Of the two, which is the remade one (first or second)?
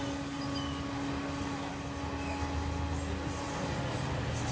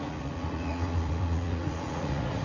second